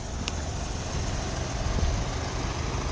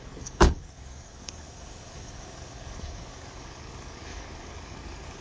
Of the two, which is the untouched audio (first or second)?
first